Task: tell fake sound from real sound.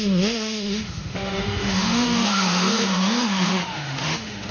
fake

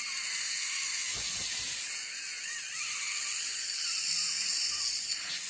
real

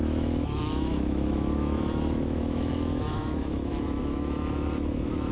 fake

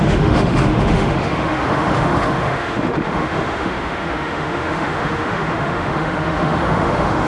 fake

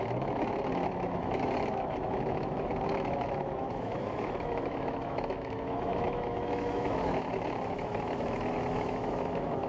fake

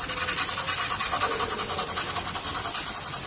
real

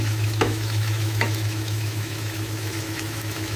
fake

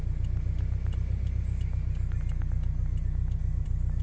real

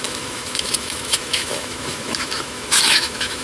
fake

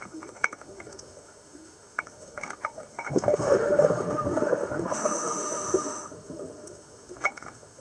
fake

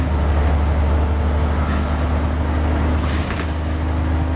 real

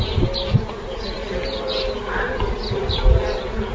real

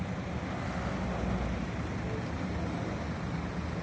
real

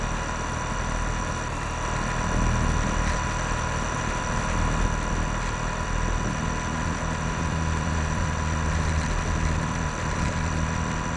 real